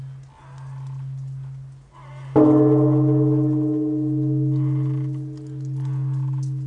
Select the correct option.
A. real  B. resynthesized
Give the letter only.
A